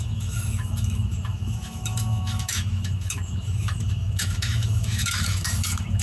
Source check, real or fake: fake